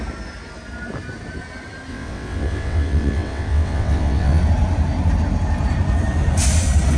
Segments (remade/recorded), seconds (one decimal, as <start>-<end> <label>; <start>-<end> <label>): 0.0-1.9 recorded; 1.9-4.4 remade; 4.4-7.0 recorded